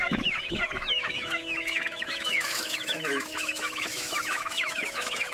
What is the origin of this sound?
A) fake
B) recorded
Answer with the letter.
A